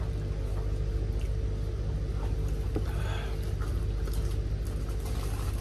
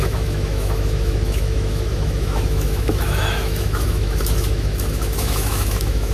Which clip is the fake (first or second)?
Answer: second